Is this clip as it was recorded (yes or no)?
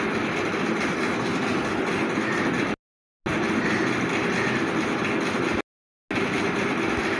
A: yes